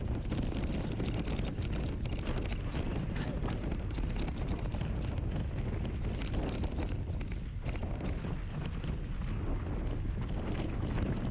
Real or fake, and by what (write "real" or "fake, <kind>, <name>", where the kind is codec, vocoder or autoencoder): real